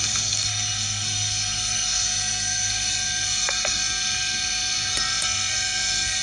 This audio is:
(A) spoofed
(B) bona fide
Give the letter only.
A